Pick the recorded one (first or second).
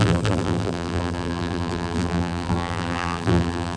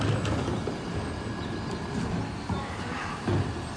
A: second